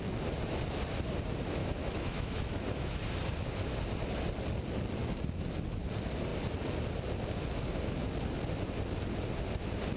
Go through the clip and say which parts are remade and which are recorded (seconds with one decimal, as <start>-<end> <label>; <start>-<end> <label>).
0.0-1.6 recorded; 1.6-3.0 remade; 3.0-10.0 recorded